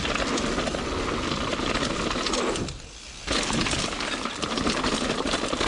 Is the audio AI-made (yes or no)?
no